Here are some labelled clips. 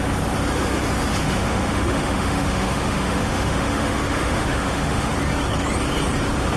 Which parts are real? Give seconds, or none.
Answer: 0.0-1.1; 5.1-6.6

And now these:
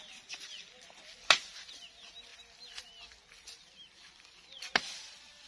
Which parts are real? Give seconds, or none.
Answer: 0.0-5.5

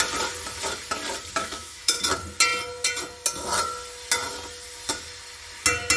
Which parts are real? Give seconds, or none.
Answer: 0.0-1.4; 2.0-6.0